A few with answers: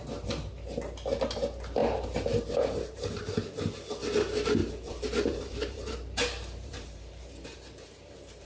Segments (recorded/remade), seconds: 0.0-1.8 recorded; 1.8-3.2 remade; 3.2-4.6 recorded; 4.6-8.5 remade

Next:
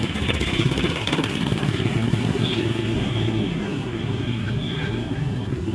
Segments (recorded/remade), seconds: 0.0-5.7 remade

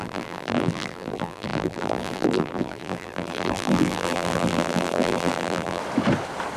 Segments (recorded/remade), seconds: 0.0-5.8 remade; 5.8-6.6 recorded

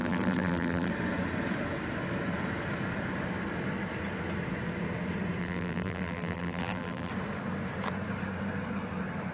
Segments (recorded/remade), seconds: 0.0-0.9 remade; 0.9-5.4 recorded; 5.4-7.1 remade; 7.1-9.3 recorded

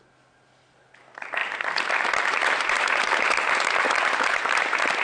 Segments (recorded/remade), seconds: 0.0-1.4 recorded; 1.4-4.4 remade; 4.4-5.0 recorded

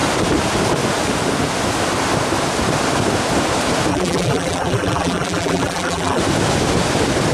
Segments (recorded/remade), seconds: 0.0-3.9 recorded; 3.9-6.2 remade; 6.2-7.3 recorded

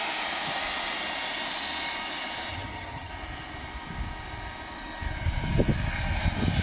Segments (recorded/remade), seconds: 0.0-2.5 recorded; 2.5-3.1 remade; 3.1-6.6 recorded